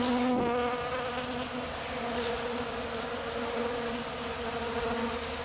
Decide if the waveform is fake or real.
real